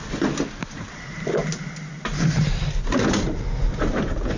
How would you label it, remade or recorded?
recorded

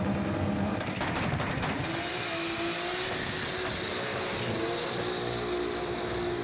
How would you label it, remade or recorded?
recorded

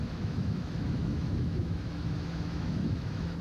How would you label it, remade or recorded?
remade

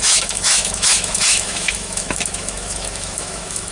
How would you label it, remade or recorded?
remade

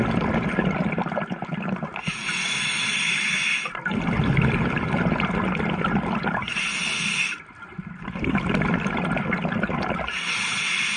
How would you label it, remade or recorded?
recorded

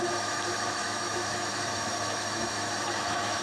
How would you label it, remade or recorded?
remade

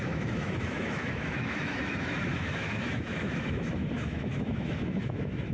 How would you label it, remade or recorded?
remade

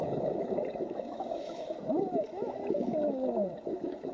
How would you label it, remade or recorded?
remade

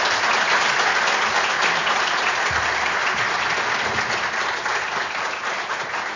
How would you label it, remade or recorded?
recorded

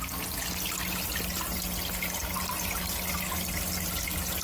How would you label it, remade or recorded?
recorded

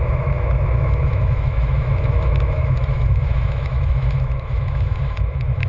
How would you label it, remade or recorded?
remade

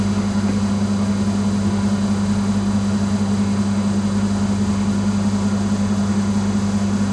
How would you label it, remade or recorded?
recorded